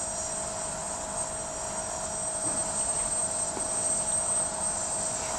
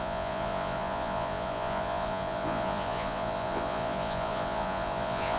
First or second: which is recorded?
first